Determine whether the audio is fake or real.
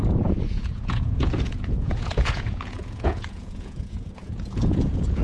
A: fake